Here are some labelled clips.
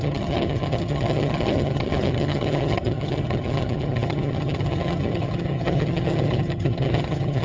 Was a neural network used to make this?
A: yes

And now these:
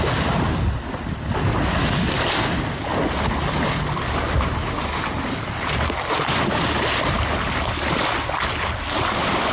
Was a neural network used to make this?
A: no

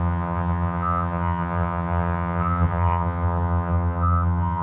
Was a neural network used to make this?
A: yes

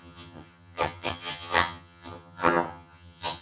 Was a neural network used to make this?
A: yes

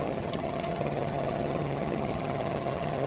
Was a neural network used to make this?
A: yes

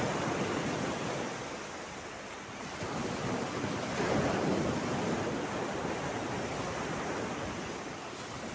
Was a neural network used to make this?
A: no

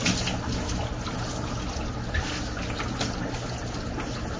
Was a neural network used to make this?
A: no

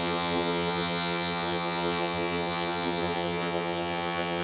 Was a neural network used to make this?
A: yes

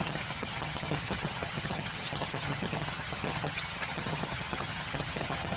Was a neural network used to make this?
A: yes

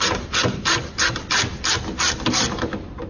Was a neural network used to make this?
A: no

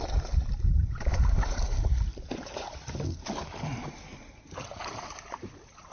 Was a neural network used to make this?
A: no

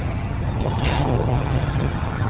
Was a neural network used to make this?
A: yes